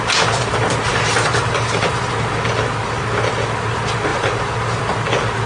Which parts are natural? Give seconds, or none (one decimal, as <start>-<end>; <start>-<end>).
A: 0.0-0.9; 2.1-4.1; 4.8-5.5